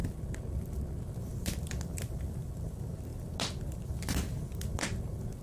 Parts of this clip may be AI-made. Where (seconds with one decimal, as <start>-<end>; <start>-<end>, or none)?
none